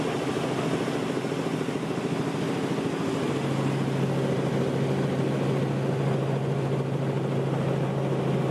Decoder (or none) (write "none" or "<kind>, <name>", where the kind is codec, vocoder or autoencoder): none